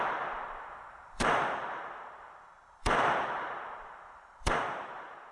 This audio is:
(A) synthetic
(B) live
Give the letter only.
A